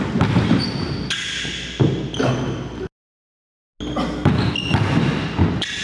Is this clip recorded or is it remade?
recorded